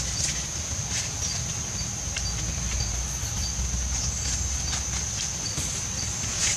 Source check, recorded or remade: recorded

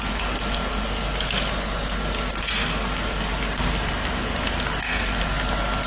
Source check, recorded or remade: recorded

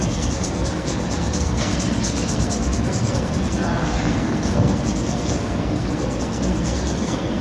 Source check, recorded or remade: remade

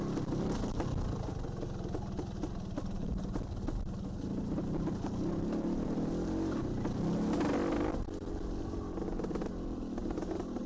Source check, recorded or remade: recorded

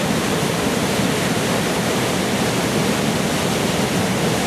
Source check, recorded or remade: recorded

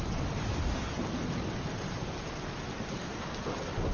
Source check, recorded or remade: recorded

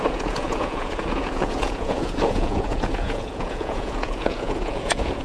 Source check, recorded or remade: remade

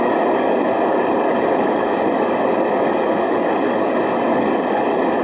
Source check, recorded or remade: remade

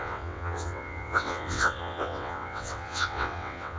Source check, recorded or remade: remade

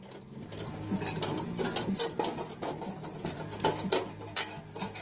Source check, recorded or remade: recorded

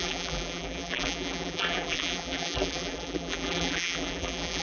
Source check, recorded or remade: remade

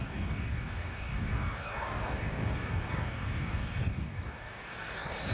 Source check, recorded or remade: remade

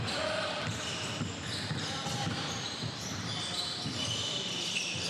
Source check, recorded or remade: recorded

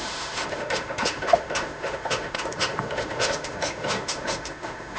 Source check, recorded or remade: remade